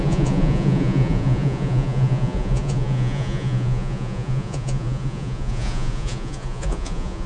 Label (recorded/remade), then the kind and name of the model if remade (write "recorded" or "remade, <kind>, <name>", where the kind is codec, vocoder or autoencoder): remade, vocoder, Vocos